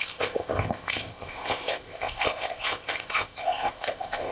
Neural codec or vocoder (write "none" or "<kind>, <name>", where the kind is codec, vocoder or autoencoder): codec, ZipCodec